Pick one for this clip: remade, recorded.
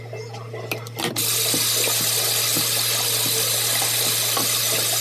recorded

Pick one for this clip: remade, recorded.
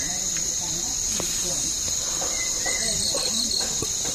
recorded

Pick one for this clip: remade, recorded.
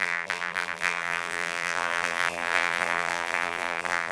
remade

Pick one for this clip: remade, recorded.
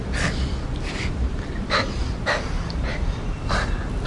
remade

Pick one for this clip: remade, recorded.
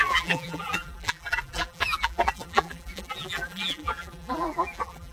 remade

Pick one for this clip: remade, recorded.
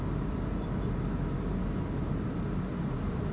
recorded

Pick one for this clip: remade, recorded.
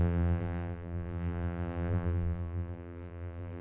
remade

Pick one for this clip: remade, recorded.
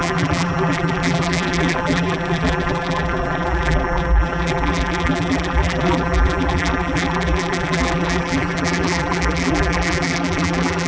remade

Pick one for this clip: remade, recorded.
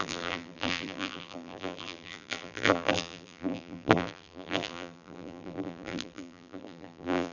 remade